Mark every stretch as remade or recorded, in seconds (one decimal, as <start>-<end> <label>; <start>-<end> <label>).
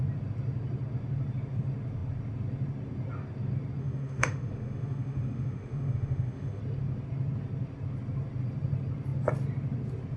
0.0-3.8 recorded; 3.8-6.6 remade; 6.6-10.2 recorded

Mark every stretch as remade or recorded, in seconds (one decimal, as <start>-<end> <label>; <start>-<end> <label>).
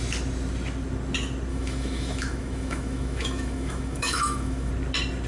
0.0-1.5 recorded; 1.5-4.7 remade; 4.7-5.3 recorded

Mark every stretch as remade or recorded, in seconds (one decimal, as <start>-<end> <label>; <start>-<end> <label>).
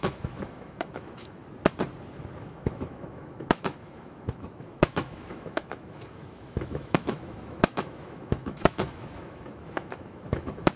0.0-1.4 remade; 1.4-2.4 recorded; 2.4-10.8 remade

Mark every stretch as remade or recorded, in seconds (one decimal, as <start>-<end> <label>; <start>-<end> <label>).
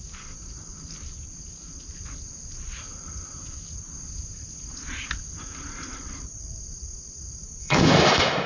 0.0-7.6 recorded; 7.6-8.5 remade